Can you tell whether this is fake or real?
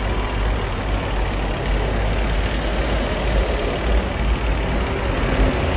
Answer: real